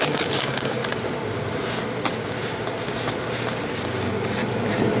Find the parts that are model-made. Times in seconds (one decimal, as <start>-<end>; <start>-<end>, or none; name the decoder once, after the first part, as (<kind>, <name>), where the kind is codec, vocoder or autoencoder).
0.0-0.8 (codec, DAC); 3.8-4.4